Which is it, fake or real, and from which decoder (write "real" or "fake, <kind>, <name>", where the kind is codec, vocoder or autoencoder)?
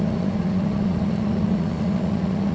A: fake, vocoder, Vocos